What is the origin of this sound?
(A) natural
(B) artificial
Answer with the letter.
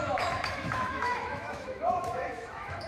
B